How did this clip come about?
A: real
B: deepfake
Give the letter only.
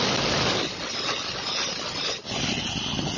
A